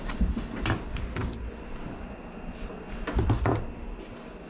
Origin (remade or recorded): recorded